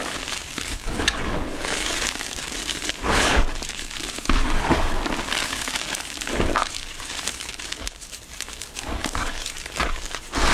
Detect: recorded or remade remade